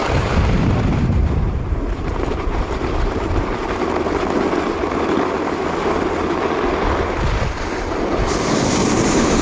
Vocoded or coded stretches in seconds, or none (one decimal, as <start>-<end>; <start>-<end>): 0.0-3.8; 8.8-9.4

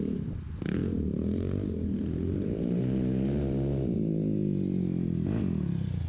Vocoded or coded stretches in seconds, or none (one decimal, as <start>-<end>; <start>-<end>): 0.8-2.8

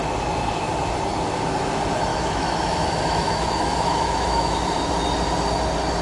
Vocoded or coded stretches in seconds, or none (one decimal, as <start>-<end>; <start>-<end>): 2.1-4.9

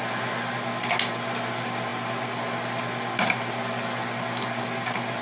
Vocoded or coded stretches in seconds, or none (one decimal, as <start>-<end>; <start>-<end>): none

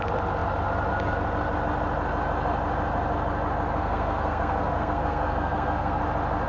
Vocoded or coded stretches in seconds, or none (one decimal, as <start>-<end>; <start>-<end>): 3.8-6.0

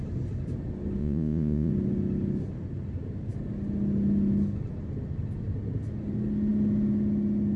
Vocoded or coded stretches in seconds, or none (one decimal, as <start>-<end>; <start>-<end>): 1.0-1.7

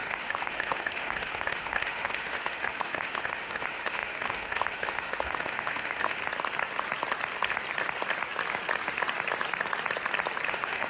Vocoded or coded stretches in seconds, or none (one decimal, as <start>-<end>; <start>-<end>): 0.0-6.2; 10.5-10.9